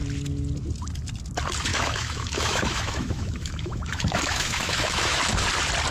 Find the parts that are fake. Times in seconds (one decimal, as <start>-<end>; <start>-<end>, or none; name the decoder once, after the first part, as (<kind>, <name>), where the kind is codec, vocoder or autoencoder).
1.7-5.2 (autoencoder, DAC-VAE)

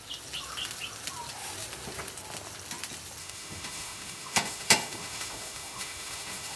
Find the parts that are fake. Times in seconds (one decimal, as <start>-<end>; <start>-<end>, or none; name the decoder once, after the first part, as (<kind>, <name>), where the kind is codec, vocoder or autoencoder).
3.2-6.6 (autoencoder, DAC-VAE)

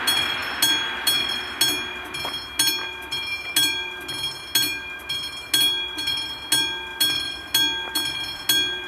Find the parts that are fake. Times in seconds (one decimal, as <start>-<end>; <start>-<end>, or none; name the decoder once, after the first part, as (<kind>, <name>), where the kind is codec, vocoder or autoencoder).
none